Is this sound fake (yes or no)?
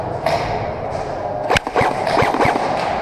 no